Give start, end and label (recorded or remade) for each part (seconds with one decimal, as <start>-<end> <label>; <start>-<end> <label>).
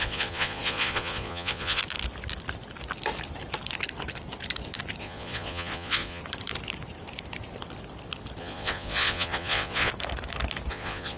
0.0-1.8 remade; 1.8-5.0 recorded; 5.0-6.2 remade; 6.2-8.4 recorded; 8.4-9.9 remade; 9.9-10.7 recorded; 10.7-11.2 remade